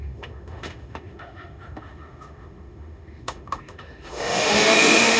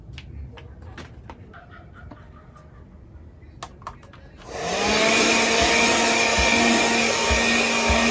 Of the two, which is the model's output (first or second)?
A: first